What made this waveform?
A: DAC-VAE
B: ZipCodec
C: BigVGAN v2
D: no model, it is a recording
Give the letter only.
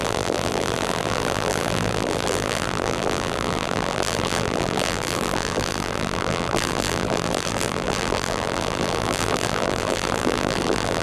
C